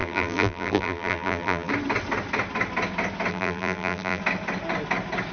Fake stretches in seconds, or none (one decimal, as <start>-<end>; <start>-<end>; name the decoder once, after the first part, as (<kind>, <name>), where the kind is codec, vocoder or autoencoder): 0.0-1.7 (vocoder, BigVGAN v2); 3.3-4.2